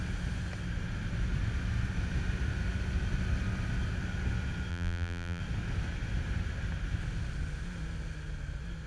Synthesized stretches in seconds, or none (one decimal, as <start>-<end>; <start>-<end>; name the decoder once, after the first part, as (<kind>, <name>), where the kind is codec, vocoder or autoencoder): 4.7-5.4 (vocoder, BigVGAN v2)